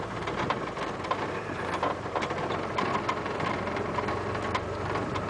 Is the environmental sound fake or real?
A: fake